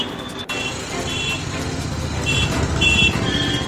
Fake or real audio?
real